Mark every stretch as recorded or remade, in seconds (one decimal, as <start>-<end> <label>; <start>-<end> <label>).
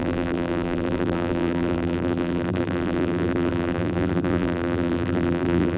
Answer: 0.0-5.8 remade